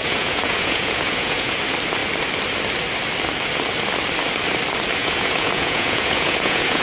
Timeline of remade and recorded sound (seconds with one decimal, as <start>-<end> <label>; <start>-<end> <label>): 0.0-1.5 remade; 1.5-5.0 recorded; 5.0-6.8 remade